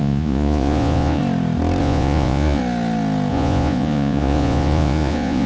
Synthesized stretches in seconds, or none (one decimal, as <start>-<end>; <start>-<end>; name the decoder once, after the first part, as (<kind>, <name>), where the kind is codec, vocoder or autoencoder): 0.0-1.2 (vocoder, Vocos); 1.8-2.6; 3.3-5.5